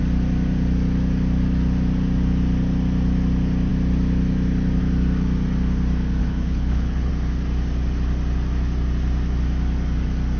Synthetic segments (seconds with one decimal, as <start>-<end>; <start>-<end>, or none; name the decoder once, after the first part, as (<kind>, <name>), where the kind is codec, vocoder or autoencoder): 6.2-7.1 (codec, HILCodec)